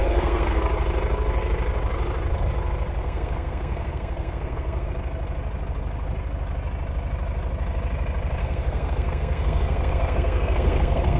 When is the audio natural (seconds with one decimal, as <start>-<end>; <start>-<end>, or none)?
0.6-3.0; 4.9-8.4